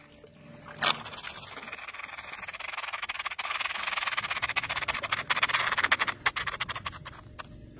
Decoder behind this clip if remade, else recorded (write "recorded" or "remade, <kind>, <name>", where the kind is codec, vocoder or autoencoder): recorded